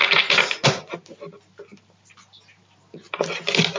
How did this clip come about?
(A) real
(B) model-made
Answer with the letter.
A